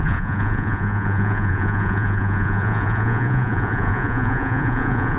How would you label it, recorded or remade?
remade